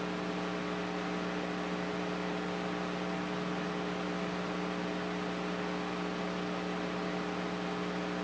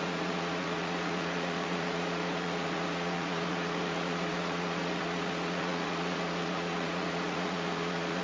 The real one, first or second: first